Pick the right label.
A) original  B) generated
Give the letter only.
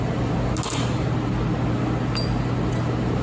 A